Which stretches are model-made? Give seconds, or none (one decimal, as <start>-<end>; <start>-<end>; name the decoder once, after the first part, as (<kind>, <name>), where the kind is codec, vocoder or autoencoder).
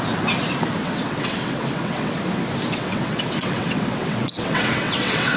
0.8-2.1 (vocoder, WaveNeXt); 2.7-5.4